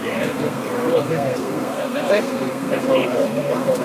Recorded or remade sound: remade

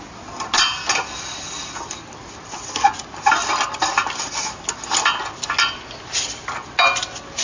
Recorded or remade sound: recorded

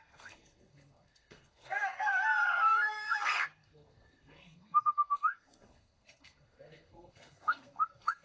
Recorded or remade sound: remade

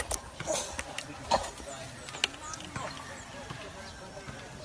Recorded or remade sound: recorded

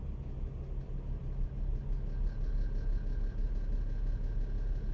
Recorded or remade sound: recorded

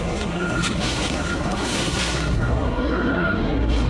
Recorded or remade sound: remade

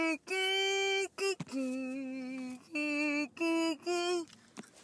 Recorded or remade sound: recorded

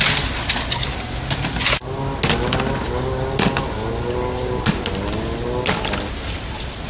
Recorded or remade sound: recorded